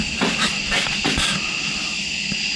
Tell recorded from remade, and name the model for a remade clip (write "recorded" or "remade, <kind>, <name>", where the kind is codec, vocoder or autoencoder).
recorded